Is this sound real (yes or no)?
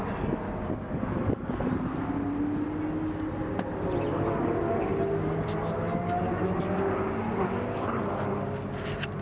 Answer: yes